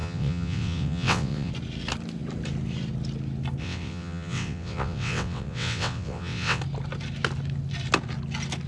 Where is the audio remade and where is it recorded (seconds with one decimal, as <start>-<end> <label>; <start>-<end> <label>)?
0.0-1.5 remade; 1.5-3.6 recorded; 3.6-6.6 remade; 6.6-8.7 recorded